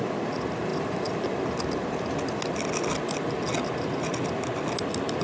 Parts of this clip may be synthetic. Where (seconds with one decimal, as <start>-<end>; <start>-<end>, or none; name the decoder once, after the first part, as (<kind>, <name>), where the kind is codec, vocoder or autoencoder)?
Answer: none